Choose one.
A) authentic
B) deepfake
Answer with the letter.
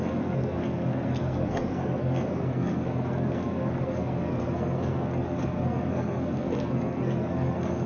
B